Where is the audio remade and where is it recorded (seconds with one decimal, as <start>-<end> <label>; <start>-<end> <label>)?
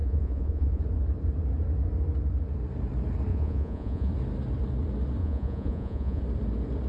0.0-0.8 remade; 0.8-3.3 recorded; 3.3-4.1 remade; 4.1-5.2 recorded; 5.2-6.2 remade; 6.2-6.9 recorded